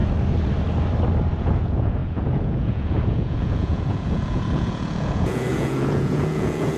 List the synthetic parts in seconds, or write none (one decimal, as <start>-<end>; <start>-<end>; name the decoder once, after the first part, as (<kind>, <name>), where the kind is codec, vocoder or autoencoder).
1.4-6.8 (vocoder, Vocos)